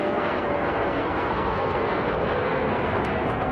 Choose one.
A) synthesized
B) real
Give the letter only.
A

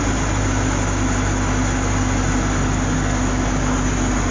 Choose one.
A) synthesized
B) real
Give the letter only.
B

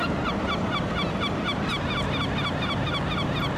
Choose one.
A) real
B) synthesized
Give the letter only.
A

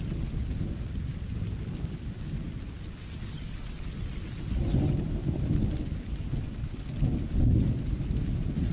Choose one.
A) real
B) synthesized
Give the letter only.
A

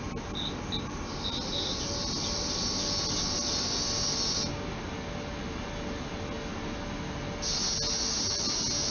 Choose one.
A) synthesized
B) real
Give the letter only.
B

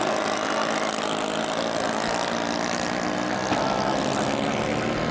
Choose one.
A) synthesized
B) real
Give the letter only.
B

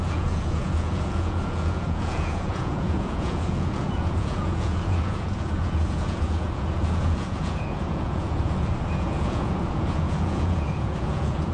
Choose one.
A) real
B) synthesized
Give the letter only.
B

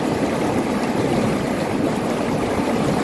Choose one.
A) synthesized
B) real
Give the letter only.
B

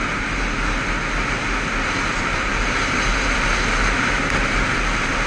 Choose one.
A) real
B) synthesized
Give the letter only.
A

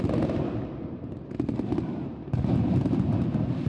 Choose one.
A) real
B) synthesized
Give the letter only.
A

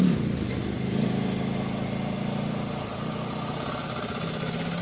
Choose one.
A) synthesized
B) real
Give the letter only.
B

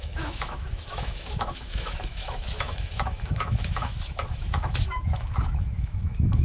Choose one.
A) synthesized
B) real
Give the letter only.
A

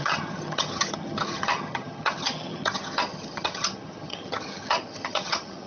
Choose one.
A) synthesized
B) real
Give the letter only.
A